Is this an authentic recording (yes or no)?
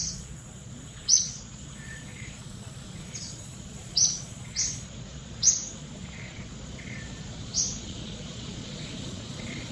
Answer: no